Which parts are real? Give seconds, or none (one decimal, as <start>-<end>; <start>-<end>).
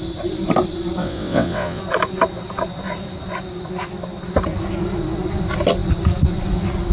0.0-1.0; 1.8-6.9